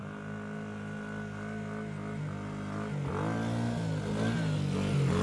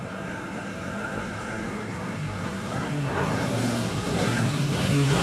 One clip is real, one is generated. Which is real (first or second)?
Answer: first